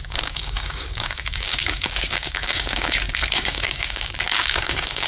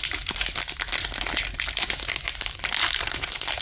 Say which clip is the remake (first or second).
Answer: first